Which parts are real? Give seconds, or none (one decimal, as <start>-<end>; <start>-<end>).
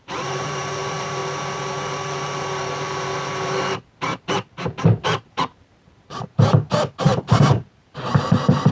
1.2-5.0